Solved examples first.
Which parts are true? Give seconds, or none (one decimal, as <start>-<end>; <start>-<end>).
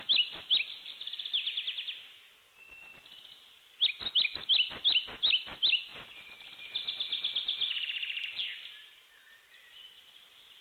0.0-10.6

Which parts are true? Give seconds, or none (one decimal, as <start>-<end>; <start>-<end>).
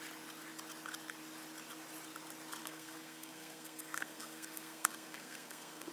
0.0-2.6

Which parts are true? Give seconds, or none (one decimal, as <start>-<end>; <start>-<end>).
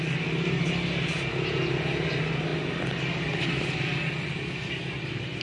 0.0-5.4